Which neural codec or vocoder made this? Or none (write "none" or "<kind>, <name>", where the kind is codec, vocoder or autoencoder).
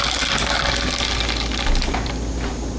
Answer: none